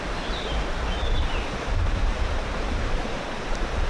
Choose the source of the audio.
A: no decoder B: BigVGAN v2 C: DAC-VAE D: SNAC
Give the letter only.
A